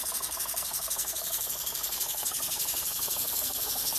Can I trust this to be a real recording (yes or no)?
no